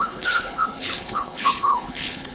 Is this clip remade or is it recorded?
remade